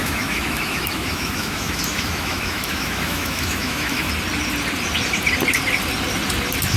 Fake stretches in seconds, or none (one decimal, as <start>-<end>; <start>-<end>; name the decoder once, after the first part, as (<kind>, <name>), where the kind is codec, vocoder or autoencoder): 0.0-4.1 (autoencoder, DAC-VAE)